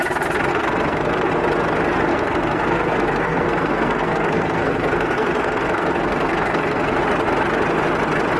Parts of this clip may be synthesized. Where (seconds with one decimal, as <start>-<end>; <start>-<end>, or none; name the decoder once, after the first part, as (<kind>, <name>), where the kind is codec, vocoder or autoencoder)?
0.5-1.3 (codec, SNAC); 2.1-7.0